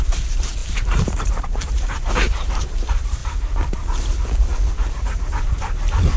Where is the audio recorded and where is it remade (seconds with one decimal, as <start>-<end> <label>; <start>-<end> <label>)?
0.0-3.2 remade; 3.2-5.1 recorded; 5.1-6.2 remade